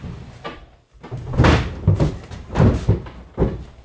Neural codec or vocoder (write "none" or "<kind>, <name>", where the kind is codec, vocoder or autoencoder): none